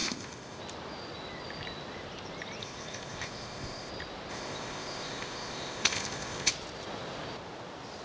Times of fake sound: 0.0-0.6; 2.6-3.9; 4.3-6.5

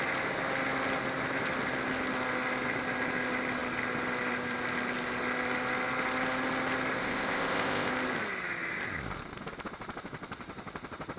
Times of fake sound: 7.0-7.9

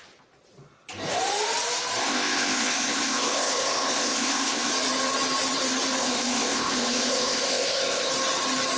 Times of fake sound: 2.0-4.7; 6.0-8.1

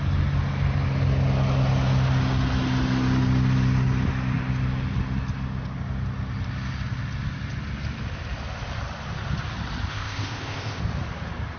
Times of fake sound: 9.9-10.8

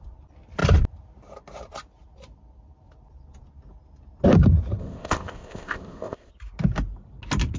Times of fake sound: 4.8-6.3

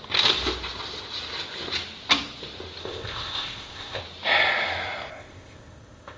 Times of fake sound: 2.8-4.0; 5.1-6.2

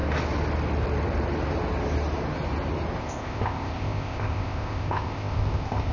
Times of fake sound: 3.0-5.9